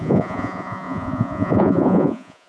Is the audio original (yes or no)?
no